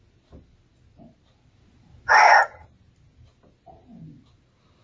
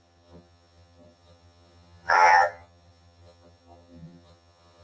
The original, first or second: first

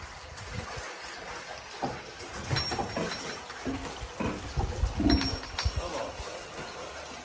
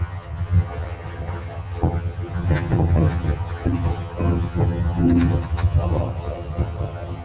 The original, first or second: first